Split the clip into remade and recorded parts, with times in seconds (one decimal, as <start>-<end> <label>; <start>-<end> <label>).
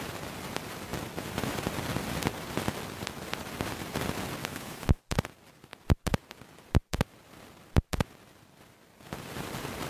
0.0-4.4 recorded; 4.4-5.0 remade; 5.0-9.9 recorded